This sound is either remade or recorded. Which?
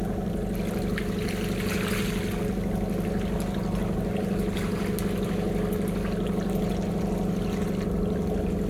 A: recorded